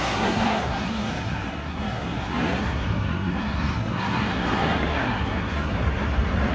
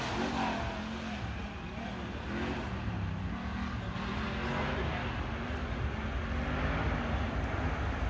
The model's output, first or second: first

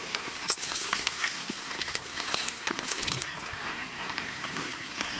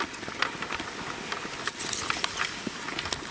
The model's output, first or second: first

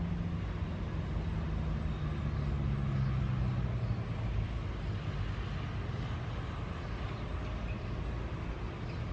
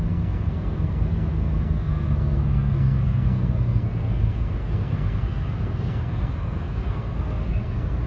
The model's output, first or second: second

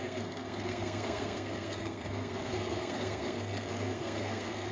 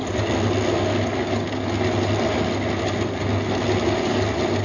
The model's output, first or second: first